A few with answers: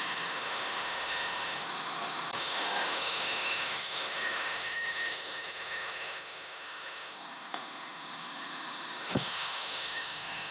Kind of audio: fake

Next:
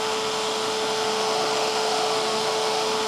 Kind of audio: fake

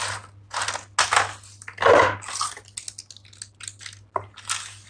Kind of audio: real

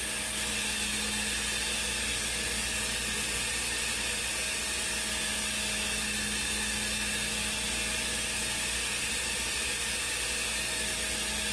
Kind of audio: real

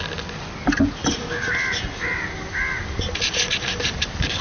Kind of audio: real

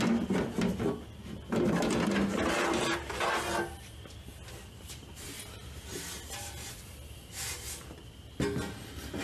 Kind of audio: real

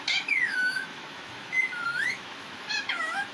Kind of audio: fake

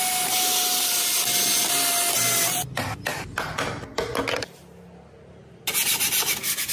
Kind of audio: real